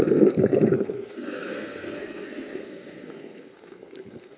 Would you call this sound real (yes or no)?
no